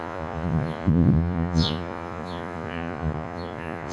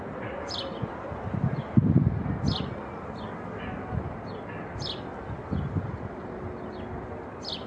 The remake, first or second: first